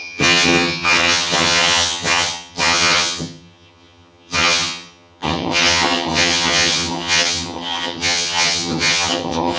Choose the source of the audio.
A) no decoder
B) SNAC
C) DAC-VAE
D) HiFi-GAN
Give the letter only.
D